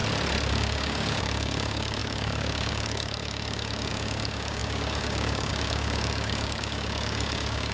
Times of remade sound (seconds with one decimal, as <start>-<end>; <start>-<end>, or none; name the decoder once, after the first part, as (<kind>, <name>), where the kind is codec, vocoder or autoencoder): 0.5-7.7 (codec, DAC)